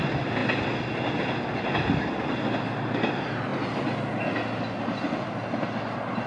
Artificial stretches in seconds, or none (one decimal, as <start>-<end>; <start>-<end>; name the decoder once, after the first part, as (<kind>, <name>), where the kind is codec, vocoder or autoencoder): none

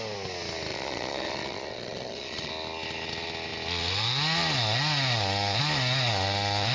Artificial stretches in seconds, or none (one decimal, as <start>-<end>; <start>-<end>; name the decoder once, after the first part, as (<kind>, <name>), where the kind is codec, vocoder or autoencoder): 0.7-2.5 (vocoder, Vocos)